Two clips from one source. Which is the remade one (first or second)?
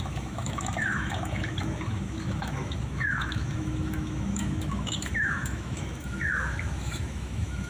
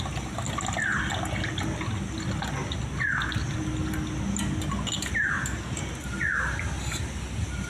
first